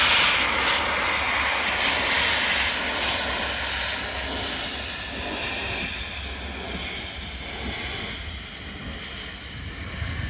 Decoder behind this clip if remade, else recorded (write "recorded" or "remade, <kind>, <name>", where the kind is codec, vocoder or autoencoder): recorded